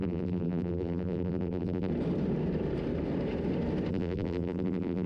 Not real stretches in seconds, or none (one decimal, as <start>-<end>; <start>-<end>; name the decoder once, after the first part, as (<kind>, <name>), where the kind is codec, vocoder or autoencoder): 0.0-1.9 (vocoder, BigVGAN v2); 3.9-5.1